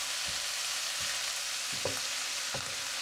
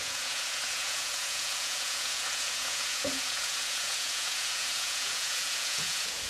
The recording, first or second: first